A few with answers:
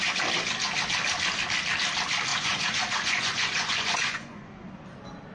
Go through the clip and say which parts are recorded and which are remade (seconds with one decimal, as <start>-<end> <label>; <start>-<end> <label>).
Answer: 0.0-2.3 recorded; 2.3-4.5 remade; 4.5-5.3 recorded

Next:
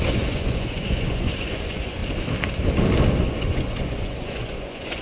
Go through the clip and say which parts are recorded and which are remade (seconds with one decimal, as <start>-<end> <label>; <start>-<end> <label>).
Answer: 0.0-2.0 remade; 2.0-3.2 recorded; 3.2-5.0 remade

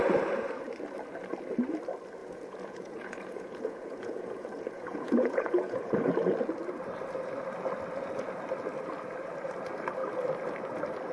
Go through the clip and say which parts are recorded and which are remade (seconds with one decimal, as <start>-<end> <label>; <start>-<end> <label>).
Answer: 0.0-2.2 recorded; 2.2-6.1 remade; 6.1-11.1 recorded